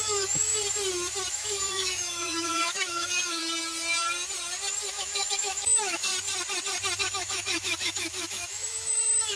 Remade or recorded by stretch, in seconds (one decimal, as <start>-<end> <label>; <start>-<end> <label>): 0.0-0.5 remade; 0.5-1.3 recorded; 1.3-3.4 remade; 3.4-4.9 recorded; 4.9-6.1 remade; 6.1-7.0 recorded; 7.0-9.4 remade